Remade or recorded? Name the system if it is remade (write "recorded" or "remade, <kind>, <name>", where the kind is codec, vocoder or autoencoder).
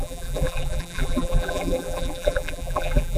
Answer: remade, vocoder, BigVGAN v2